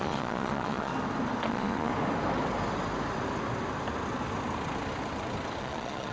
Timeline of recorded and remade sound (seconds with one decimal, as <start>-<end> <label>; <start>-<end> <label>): 0.0-0.9 remade; 0.9-1.5 recorded; 1.5-1.9 remade; 1.9-5.6 recorded; 5.6-6.1 remade